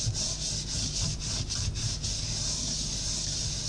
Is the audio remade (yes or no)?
no